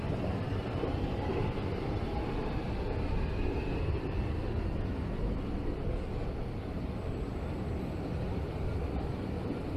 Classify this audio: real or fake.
real